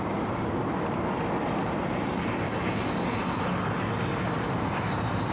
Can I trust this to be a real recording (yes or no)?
yes